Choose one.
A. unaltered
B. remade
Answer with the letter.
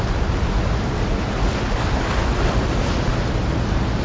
A